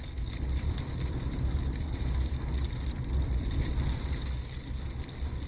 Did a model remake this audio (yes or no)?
no